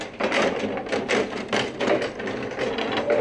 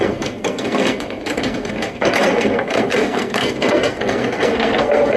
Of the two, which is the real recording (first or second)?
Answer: first